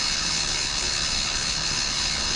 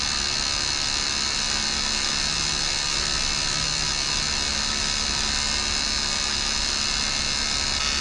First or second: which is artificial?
first